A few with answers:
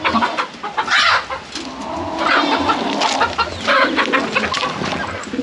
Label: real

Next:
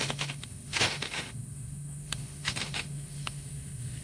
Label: fake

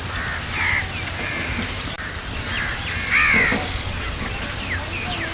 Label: real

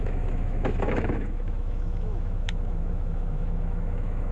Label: fake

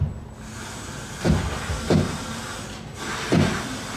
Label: real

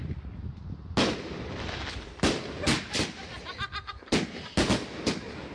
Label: real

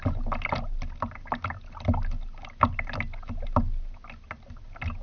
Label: real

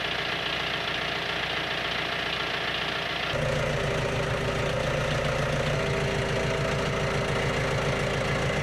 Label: real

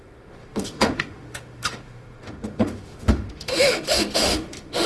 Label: fake